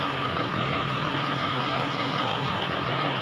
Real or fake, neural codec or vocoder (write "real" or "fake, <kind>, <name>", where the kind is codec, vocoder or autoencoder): fake, codec, SNAC